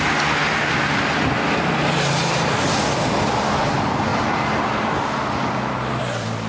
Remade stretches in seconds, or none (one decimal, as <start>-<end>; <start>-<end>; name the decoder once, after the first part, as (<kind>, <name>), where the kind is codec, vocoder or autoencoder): none